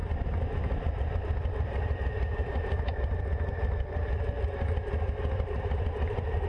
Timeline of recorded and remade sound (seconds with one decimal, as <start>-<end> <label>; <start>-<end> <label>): 0.0-6.5 remade